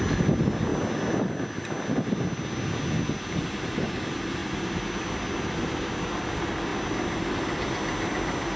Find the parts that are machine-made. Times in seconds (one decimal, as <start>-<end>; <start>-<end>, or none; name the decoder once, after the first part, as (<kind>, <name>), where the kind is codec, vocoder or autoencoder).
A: none